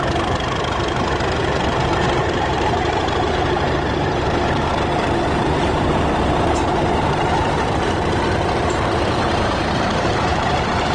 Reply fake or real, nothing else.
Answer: fake